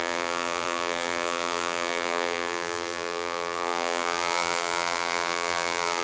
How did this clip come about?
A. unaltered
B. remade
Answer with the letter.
B